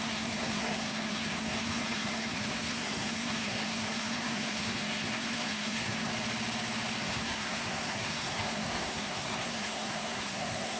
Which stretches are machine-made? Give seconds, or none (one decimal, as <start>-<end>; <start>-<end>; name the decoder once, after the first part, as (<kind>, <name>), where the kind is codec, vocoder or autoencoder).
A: 0.0-6.1 (codec, SNAC); 7.0-10.8